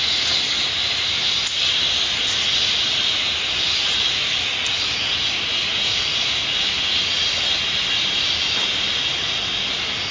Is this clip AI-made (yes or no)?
no